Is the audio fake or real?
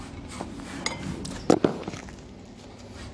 real